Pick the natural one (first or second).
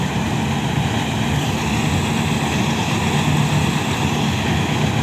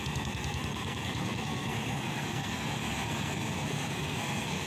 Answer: first